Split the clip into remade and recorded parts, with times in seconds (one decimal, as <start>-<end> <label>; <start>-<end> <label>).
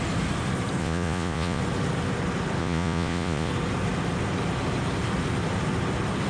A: 0.0-0.8 recorded; 0.8-1.6 remade; 1.6-2.6 recorded; 2.6-3.5 remade; 3.5-6.3 recorded